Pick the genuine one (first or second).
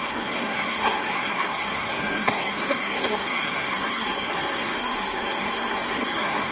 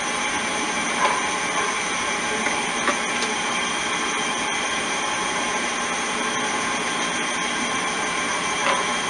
second